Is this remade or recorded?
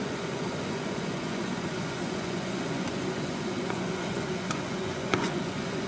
remade